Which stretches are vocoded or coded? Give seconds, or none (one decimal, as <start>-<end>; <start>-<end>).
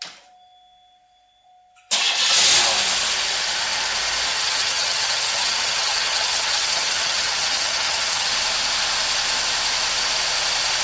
4.3-8.3